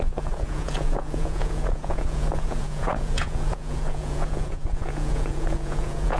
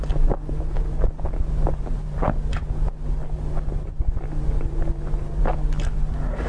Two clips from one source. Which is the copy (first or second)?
first